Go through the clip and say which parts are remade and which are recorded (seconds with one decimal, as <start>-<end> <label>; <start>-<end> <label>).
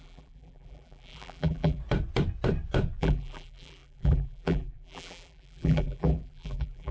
0.0-1.8 remade; 1.8-3.0 recorded; 3.0-6.9 remade